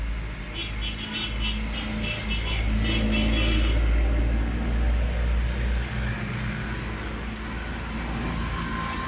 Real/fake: real